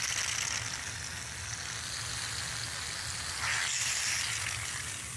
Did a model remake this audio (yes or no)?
no